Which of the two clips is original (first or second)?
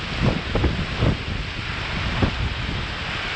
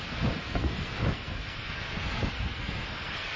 first